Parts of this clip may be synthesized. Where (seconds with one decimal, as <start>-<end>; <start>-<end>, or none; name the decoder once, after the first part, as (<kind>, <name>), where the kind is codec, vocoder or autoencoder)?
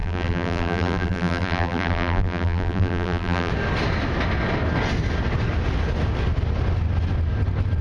0.0-3.5 (vocoder, BigVGAN v2)